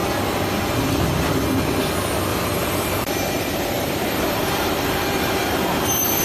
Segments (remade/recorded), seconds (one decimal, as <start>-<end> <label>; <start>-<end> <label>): 0.0-2.3 recorded; 2.3-5.3 remade; 5.3-6.2 recorded